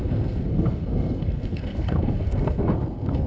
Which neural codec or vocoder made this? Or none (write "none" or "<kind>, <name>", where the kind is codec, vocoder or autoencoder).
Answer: codec, SNAC